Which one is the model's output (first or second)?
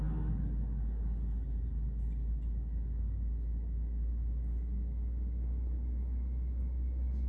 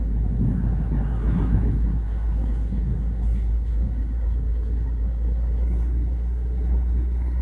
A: second